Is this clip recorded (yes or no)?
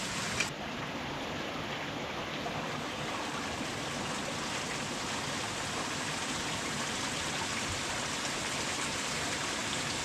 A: yes